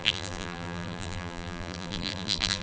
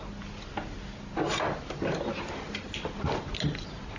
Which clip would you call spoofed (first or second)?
first